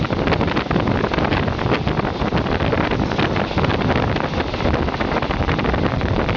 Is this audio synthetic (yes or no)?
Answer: no